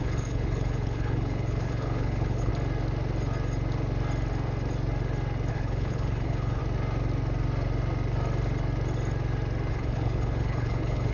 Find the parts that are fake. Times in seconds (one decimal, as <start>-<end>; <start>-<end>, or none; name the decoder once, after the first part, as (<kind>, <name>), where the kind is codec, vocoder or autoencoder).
0.0-2.5 (codec, HILCodec); 5.5-6.6; 9.7-11.1